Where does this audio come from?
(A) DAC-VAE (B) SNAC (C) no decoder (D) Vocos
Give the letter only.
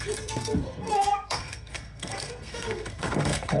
B